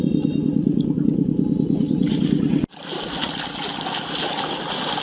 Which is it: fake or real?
real